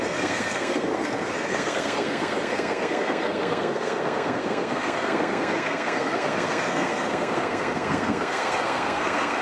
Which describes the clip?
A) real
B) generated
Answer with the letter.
B